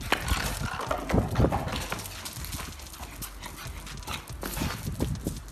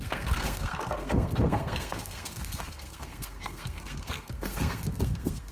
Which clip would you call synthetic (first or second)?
second